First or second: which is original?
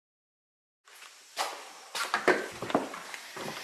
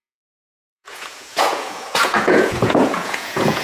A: first